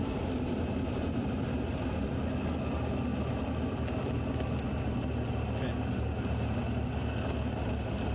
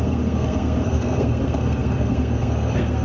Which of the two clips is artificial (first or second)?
second